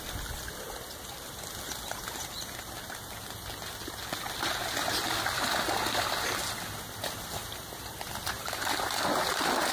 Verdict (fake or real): real